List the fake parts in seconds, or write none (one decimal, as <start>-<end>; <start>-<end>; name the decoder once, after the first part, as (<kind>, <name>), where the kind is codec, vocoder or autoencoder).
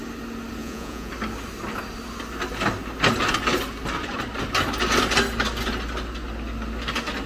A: 0.6-1.1 (vocoder, Vocos)